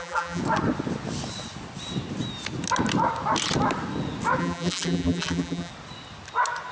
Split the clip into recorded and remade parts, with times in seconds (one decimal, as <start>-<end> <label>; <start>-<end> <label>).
0.0-0.4 remade; 0.4-4.4 recorded; 4.4-5.7 remade; 5.7-6.7 recorded